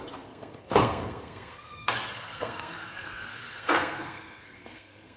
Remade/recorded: remade